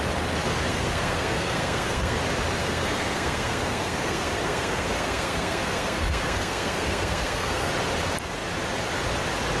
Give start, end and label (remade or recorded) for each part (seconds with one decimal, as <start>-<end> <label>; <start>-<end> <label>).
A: 0.0-0.7 recorded; 0.7-2.2 remade; 2.2-2.6 recorded; 2.6-7.7 remade; 7.7-9.6 recorded